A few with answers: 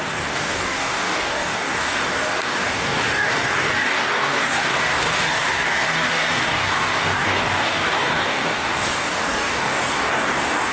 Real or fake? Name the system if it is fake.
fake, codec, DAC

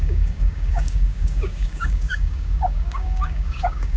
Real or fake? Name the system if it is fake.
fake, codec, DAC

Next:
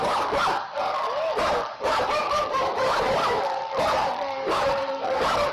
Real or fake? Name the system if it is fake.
fake, codec, DAC